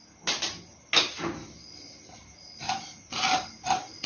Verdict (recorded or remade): recorded